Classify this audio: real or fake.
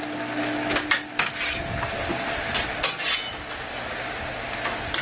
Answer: real